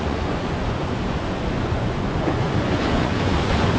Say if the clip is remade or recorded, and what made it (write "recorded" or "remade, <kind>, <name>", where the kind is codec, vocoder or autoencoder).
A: remade, vocoder, Vocos